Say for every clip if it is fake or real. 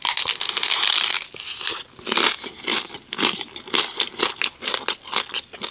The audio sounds real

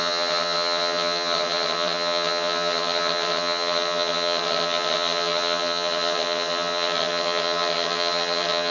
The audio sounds fake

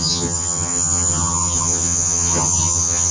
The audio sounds fake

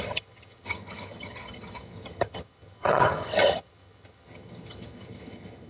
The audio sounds fake